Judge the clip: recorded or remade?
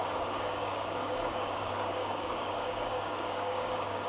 remade